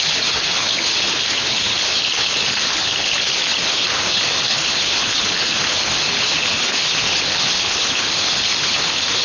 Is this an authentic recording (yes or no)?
no